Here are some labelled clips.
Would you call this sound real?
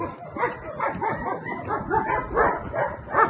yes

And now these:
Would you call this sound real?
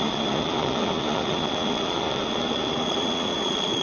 no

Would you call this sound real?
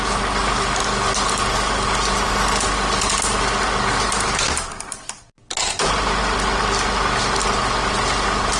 yes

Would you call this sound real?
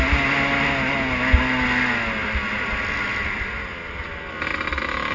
yes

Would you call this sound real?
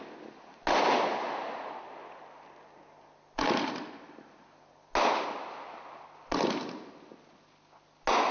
yes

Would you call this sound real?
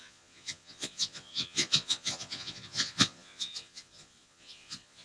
no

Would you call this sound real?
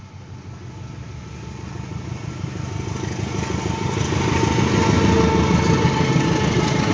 yes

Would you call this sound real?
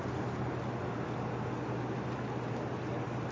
yes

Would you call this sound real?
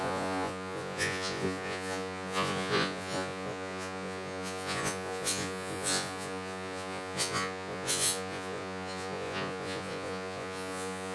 no